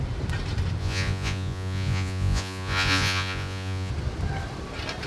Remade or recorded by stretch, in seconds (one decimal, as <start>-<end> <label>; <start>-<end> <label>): 0.0-0.8 recorded; 0.8-3.9 remade; 3.9-5.1 recorded

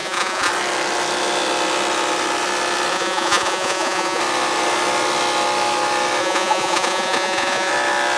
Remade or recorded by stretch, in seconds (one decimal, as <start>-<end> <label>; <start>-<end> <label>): 0.0-0.5 remade; 0.5-2.9 recorded; 2.9-4.2 remade; 4.2-6.2 recorded; 6.2-7.7 remade; 7.7-8.2 recorded

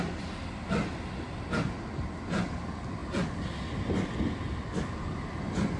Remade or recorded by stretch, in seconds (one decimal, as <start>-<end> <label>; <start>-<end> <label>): 0.0-5.8 recorded

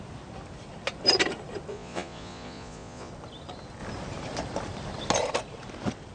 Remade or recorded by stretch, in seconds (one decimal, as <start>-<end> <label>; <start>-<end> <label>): 0.0-1.7 recorded; 1.7-3.1 remade; 3.1-6.1 recorded

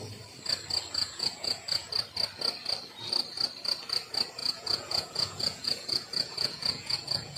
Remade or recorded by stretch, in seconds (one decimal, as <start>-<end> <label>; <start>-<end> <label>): 0.0-1.0 recorded; 1.0-1.9 remade; 1.9-4.4 recorded; 4.4-7.4 remade

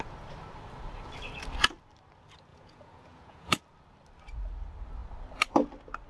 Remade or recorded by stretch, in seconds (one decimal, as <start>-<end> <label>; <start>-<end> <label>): 0.0-2.5 recorded; 2.5-3.6 remade; 3.6-6.1 recorded

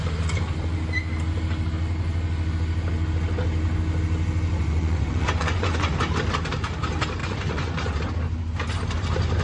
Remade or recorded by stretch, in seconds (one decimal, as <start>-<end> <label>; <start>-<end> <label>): 0.0-4.6 recorded; 4.6-5.9 remade; 5.9-7.2 recorded; 7.2-8.0 remade; 8.0-9.4 recorded